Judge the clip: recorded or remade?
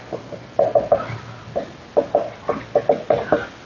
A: recorded